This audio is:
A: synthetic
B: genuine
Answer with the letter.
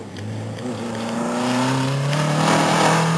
B